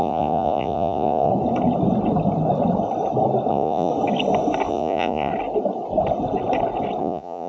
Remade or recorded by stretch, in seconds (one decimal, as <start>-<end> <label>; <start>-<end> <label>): 0.0-1.3 remade; 1.3-3.5 recorded; 3.5-3.9 remade; 3.9-4.7 recorded; 4.7-5.3 remade; 5.3-7.0 recorded; 7.0-7.5 remade